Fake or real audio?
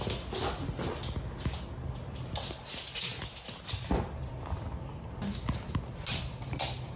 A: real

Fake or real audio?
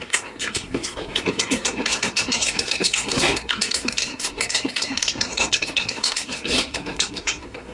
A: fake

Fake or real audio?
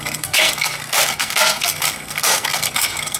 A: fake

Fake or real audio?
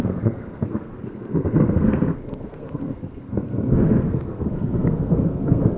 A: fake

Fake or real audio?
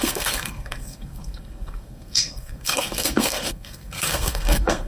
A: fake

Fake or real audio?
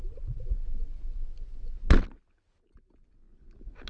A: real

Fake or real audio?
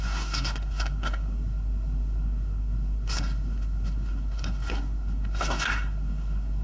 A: fake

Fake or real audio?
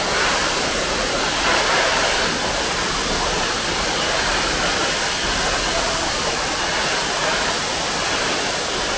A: real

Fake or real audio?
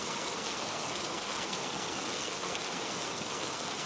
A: fake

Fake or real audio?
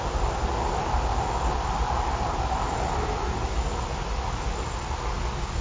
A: real